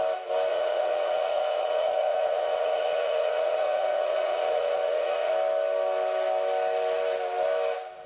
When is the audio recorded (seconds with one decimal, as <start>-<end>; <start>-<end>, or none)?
0.0-0.5; 5.3-8.1